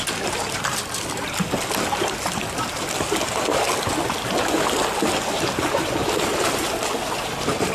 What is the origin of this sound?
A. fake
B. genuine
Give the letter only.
B